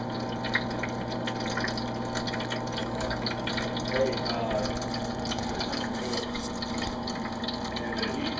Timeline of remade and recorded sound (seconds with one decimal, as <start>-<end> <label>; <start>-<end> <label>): 0.0-2.8 recorded; 2.8-3.5 remade; 3.5-8.4 recorded